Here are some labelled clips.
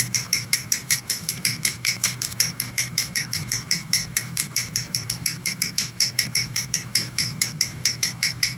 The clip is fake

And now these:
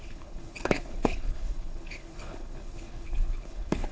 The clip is fake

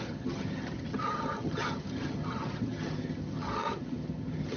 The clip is fake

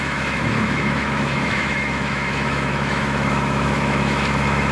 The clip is fake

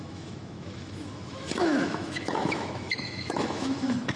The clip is fake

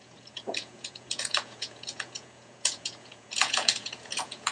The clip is fake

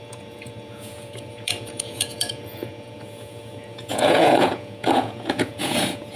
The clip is fake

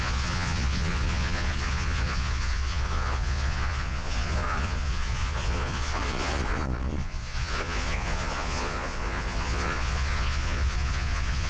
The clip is fake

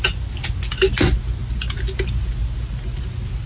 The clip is real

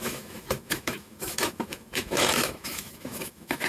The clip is fake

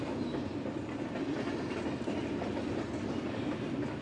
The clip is real